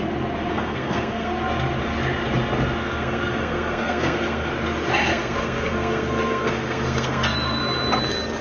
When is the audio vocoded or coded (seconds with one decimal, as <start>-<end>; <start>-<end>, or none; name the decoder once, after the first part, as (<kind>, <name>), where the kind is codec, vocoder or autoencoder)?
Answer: 0.5-1.3 (codec, SNAC); 2.8-4.5; 5.1-7.6